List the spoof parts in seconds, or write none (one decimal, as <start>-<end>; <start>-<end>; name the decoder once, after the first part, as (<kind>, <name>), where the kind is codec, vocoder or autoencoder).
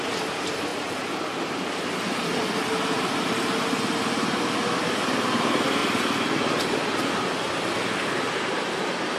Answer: none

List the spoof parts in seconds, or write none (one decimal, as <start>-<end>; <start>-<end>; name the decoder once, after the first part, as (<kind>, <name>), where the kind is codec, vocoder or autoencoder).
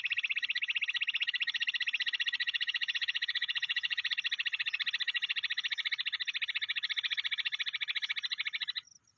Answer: 2.4-4.1 (vocoder, Vocos)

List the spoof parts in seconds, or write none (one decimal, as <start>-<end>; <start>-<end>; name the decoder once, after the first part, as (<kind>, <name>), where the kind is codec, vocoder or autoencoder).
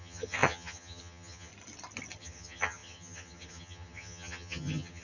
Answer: 0.0-1.5 (vocoder, HiFi-GAN); 2.2-5.0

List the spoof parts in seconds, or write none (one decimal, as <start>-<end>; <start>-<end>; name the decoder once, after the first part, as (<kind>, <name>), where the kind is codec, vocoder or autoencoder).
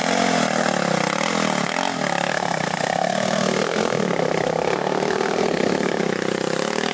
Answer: 2.3-6.0 (codec, SNAC)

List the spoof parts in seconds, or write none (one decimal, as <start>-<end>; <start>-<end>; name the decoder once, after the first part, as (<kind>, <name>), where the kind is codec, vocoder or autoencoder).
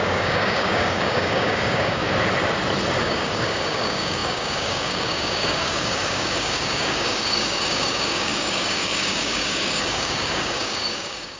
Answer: 0.0-2.0 (codec, DAC); 3.0-11.4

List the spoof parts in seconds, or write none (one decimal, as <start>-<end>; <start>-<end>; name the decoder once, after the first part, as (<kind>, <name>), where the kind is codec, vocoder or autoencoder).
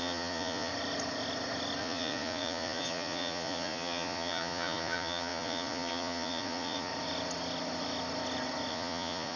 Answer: 0.0-0.7 (vocoder, Vocos); 1.8-6.9; 8.7-9.4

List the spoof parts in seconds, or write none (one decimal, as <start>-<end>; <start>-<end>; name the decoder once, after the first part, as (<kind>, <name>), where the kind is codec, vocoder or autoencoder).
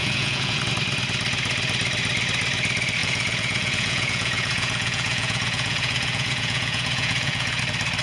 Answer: 0.0-0.6 (vocoder, Vocos); 3.0-7.6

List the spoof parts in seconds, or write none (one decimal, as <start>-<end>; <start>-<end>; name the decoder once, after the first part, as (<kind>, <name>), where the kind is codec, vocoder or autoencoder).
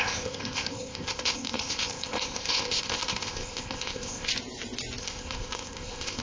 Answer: 0.0-4.3 (codec, ZipCodec); 5.0-6.2